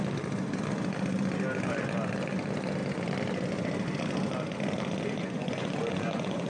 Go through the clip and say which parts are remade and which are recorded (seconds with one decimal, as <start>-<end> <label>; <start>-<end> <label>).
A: 0.0-5.2 recorded; 5.2-6.5 remade